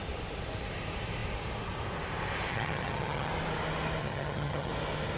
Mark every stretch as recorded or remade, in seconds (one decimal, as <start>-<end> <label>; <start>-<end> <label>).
0.0-2.5 recorded; 2.5-3.3 remade; 3.3-4.0 recorded; 4.0-4.7 remade; 4.7-5.2 recorded